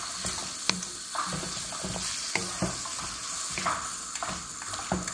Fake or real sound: real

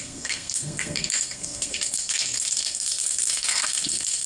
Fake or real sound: fake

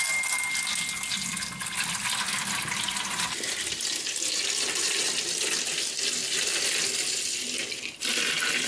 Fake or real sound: real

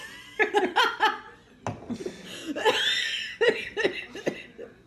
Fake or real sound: real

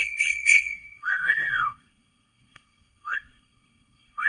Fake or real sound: fake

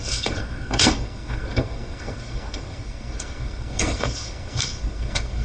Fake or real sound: fake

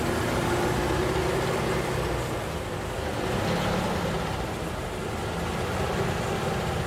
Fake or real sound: real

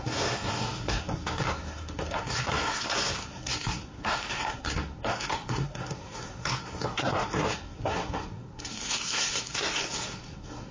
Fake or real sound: fake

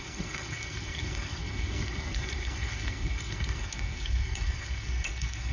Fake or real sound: fake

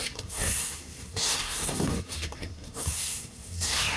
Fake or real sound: fake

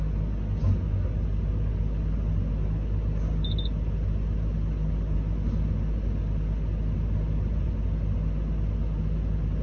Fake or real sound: real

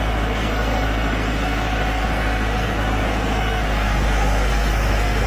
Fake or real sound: fake